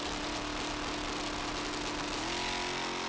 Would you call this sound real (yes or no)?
yes